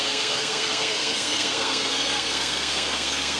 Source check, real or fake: fake